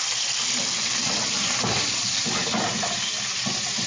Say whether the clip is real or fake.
real